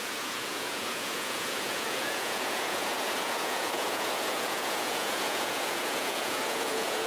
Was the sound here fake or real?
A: fake